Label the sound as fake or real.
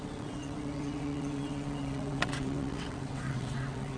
fake